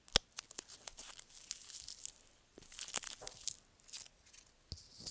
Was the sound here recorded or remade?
recorded